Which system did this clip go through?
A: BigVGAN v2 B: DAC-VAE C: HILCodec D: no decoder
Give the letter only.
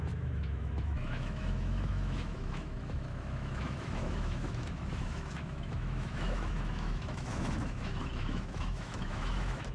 B